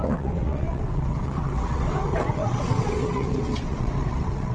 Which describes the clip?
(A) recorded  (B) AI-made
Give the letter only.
B